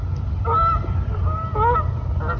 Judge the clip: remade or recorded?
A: recorded